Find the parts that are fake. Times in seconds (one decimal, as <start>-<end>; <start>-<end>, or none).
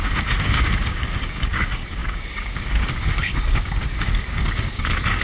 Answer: 0.0-5.2